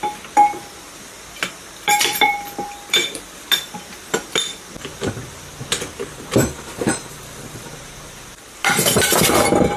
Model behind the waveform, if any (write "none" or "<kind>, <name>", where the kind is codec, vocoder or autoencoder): vocoder, BigVGAN v2